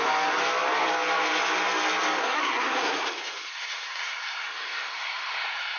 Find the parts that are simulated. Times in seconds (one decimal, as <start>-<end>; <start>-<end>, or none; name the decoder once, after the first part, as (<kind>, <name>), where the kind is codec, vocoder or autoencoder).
2.2-5.8 (codec, SNAC)